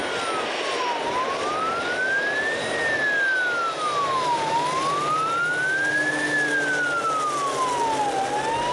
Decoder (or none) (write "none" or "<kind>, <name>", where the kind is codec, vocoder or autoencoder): none